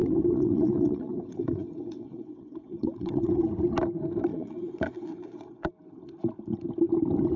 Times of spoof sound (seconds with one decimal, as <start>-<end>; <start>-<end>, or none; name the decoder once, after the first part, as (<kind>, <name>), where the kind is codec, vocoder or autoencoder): 0.0-3.4 (vocoder, WaveNeXt); 4.3-5.7